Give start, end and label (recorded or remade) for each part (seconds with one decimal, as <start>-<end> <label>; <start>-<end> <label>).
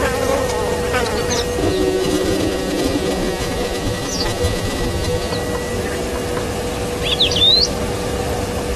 0.0-1.6 recorded; 1.6-5.3 remade; 5.3-8.8 recorded